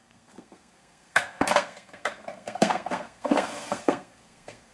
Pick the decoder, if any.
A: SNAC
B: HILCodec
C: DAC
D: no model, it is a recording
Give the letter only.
A